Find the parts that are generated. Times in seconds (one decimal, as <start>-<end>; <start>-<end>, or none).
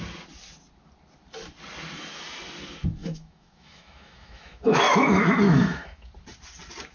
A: 3.0-6.1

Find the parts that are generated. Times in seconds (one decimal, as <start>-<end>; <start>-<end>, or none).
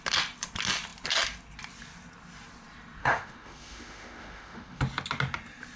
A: 3.0-4.8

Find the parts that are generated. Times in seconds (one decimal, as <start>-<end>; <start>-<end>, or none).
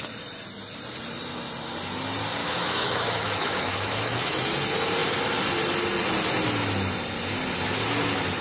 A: 2.4-4.3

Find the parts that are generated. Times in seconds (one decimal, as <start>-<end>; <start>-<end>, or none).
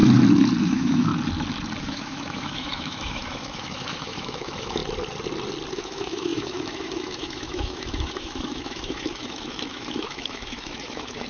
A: 0.6-1.1; 1.8-4.8; 5.7-11.3